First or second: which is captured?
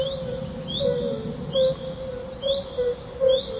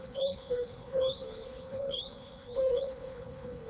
first